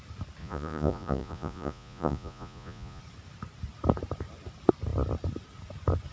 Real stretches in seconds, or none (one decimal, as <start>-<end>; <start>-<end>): 0.0-0.4; 3.0-6.1